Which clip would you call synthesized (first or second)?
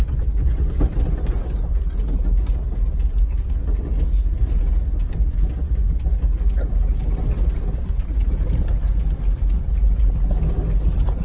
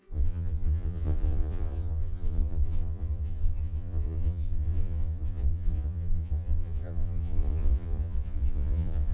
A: second